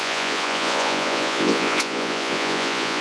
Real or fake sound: fake